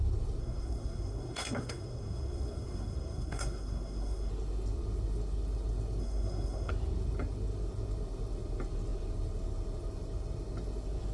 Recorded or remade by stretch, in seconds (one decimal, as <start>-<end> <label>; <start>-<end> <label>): 0.0-0.4 recorded; 0.4-4.3 remade; 4.3-6.0 recorded; 6.0-6.7 remade; 6.7-11.1 recorded